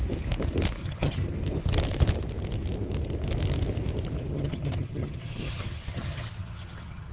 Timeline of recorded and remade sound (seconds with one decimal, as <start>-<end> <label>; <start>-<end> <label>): 0.0-0.8 recorded; 0.8-1.3 remade; 1.3-4.3 recorded; 4.3-7.1 remade